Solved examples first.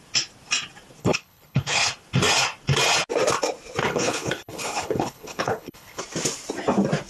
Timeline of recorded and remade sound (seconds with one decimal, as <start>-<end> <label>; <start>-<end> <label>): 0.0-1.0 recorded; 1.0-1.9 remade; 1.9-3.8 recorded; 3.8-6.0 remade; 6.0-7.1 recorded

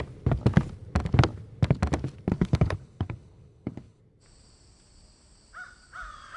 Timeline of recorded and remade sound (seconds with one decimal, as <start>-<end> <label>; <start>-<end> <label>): 0.0-2.3 recorded; 2.3-4.0 remade; 4.0-6.4 recorded

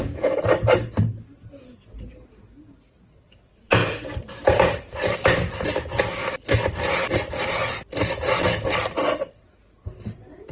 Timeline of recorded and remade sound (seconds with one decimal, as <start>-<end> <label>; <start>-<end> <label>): 0.0-10.5 recorded

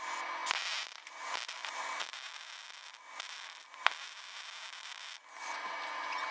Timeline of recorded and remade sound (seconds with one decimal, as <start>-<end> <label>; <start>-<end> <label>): 0.0-6.3 recorded

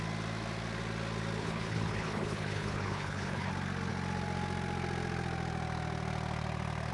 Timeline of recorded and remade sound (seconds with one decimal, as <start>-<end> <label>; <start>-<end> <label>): 0.0-1.4 recorded; 1.4-3.5 remade; 3.5-6.9 recorded

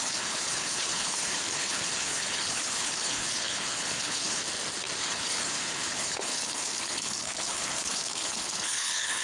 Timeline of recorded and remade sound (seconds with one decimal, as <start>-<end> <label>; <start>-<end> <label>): 0.0-4.4 remade; 4.4-5.0 recorded; 5.0-9.2 remade

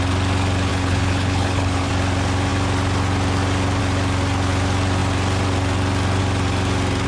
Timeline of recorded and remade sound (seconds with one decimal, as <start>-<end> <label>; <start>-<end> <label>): 0.0-0.7 recorded; 0.7-1.9 remade; 1.9-7.1 recorded